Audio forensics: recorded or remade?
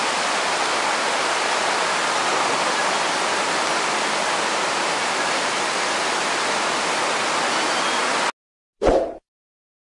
recorded